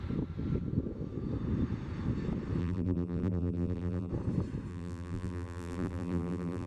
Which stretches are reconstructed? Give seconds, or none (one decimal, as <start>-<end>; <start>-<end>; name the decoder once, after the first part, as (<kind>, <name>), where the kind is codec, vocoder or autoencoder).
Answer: 2.6-4.1 (vocoder, BigVGAN v2); 4.7-6.7